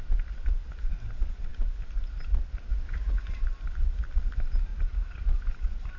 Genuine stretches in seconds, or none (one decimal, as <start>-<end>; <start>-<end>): 0.0-2.7; 3.4-4.7; 5.2-6.0